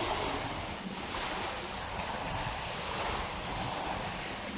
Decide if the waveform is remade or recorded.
recorded